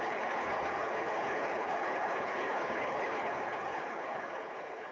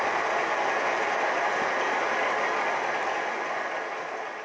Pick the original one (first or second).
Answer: second